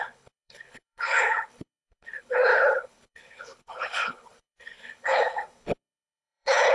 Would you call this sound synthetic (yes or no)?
yes